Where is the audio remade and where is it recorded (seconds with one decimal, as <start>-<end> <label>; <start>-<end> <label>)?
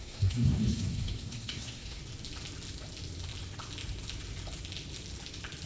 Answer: 0.0-2.0 remade; 2.0-5.7 recorded